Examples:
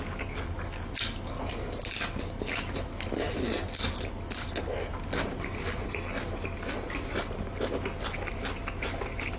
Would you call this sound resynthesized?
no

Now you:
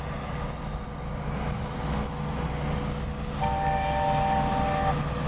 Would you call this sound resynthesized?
no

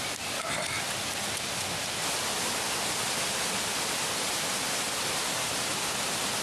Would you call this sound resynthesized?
no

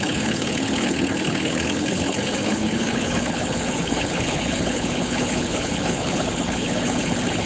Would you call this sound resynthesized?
yes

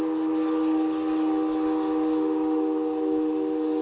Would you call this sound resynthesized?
no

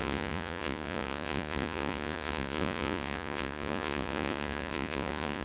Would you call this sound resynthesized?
yes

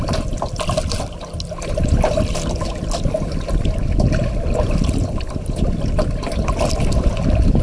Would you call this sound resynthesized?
no